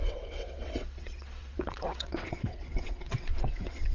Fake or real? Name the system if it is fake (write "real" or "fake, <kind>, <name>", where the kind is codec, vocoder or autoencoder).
fake, vocoder, WaveNeXt